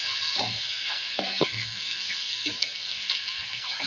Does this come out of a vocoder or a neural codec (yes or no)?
yes